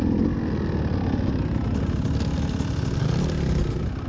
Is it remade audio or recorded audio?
recorded